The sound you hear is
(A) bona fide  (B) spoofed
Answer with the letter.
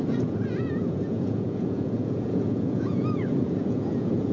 B